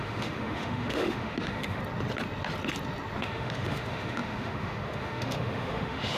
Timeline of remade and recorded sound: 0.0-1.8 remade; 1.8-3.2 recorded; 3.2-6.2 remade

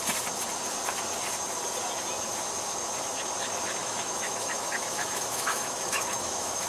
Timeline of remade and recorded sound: 0.0-3.8 recorded; 3.8-6.7 remade